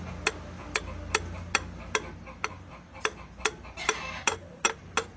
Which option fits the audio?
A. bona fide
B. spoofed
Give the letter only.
A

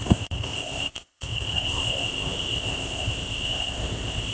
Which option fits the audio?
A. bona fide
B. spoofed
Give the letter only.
B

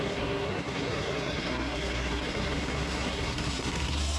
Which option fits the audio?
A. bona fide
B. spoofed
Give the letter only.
B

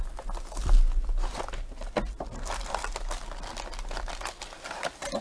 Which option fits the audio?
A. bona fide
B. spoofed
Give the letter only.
A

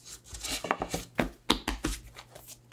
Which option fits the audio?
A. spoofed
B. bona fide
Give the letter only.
B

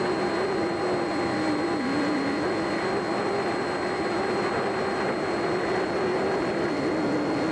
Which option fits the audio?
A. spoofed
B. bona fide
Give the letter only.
B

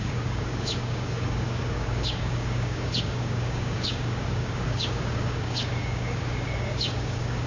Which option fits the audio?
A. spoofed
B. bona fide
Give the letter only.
A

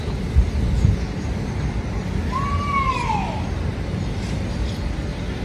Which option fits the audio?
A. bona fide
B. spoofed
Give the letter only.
A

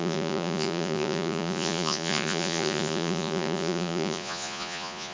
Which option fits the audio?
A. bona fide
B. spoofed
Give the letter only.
B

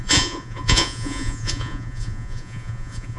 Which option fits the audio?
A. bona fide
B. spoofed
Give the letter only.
B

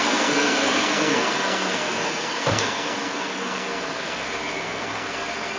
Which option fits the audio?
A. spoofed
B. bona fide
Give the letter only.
A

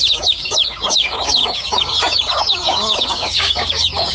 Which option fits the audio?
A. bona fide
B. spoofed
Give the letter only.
B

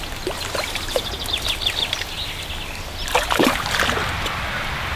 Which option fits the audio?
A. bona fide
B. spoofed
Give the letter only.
A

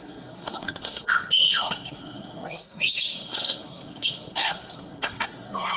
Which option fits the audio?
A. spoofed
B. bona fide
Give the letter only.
A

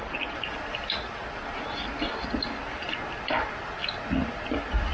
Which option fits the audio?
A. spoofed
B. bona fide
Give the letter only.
B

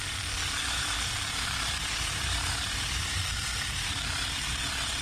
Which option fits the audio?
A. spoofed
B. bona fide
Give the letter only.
A